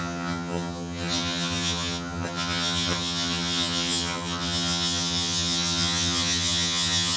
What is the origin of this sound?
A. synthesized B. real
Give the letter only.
A